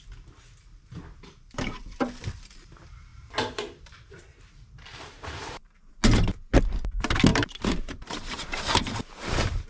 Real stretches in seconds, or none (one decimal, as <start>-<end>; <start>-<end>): 0.0-3.1; 4.2-4.9; 5.9-7.3